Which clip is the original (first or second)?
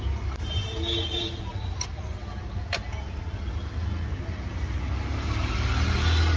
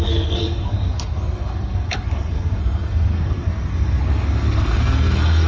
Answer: first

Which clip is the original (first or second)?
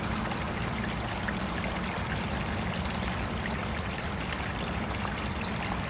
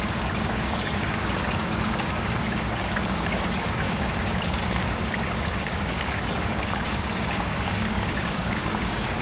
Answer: first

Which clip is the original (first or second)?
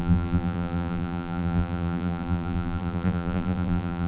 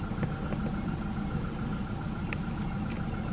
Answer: second